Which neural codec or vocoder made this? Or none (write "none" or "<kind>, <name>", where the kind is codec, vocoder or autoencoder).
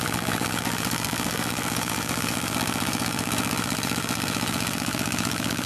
vocoder, BigVGAN v2